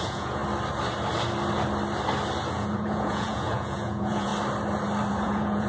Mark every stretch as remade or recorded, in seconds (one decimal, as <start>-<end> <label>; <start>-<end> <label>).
0.0-0.4 remade; 0.4-2.5 recorded; 2.5-4.3 remade; 4.3-5.1 recorded; 5.1-5.7 remade